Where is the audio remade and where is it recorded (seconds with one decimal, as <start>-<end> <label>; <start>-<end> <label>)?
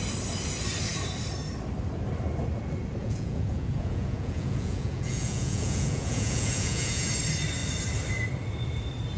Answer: 0.0-3.0 recorded; 3.0-7.1 remade; 7.1-9.2 recorded